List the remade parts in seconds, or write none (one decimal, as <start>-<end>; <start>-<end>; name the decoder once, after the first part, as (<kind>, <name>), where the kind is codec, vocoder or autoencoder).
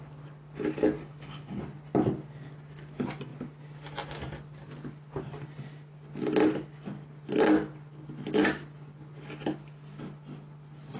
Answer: 1.0-1.6 (codec, HILCodec)